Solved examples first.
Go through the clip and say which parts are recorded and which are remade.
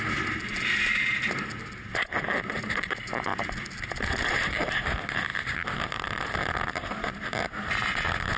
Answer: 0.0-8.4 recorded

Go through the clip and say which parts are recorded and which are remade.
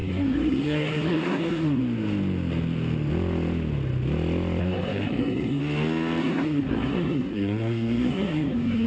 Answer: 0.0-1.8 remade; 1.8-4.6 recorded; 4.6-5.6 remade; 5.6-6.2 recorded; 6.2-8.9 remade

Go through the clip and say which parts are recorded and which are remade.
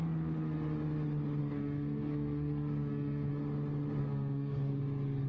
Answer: 0.0-1.4 recorded; 1.4-3.3 remade; 3.3-4.0 recorded; 4.0-4.7 remade; 4.7-5.3 recorded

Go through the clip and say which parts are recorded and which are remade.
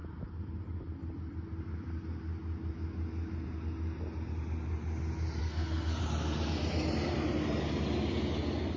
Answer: 0.0-5.4 recorded; 5.4-6.0 remade; 6.0-8.8 recorded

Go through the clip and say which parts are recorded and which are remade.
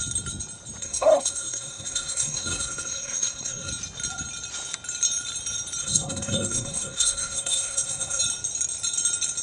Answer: 0.0-0.8 recorded; 0.8-3.7 remade; 3.7-5.8 recorded; 5.8-8.2 remade; 8.2-9.4 recorded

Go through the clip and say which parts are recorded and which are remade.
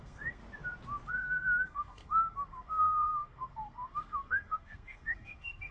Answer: 0.0-0.4 remade; 0.4-1.1 recorded; 1.1-5.7 remade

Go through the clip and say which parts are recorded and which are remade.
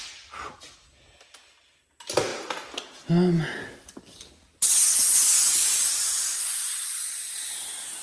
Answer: 0.0-8.0 recorded